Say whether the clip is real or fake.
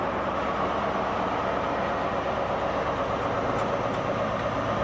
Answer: real